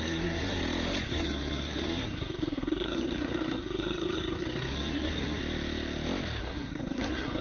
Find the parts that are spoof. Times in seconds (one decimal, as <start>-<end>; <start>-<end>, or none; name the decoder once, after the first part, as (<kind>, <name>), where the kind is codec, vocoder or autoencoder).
0.0-0.6 (codec, SNAC); 1.1-5.4; 6.4-7.4

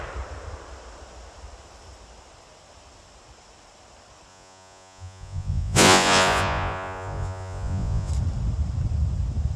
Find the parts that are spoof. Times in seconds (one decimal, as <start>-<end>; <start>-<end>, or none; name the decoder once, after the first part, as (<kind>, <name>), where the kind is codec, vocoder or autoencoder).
4.3-8.1 (vocoder, Vocos)

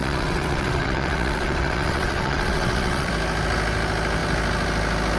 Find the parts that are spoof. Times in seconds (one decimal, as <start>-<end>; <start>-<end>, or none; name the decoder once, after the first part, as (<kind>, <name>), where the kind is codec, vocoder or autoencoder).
0.0-3.1 (vocoder, WaveNeXt)